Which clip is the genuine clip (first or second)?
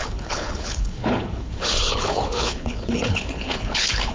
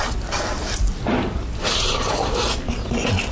second